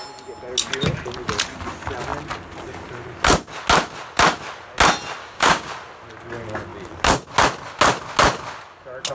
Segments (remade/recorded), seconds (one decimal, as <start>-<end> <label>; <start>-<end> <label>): 0.0-5.2 recorded; 5.2-5.7 remade; 5.7-9.1 recorded